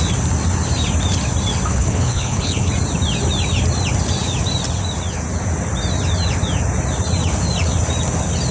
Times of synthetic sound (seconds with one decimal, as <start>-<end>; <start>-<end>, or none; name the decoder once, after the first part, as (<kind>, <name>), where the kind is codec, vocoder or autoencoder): 1.7-2.7 (codec, HILCodec)